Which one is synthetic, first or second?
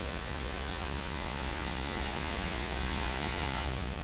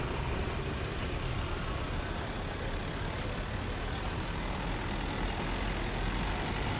first